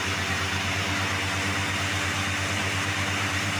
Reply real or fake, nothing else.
fake